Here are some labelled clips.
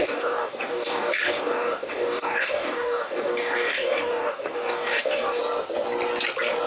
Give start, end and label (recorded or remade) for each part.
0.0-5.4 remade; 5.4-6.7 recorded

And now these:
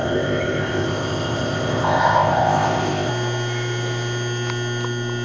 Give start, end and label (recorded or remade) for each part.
0.0-3.1 remade; 3.1-5.2 recorded

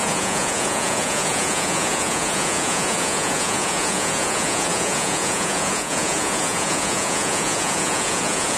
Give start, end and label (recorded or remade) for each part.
0.0-8.6 remade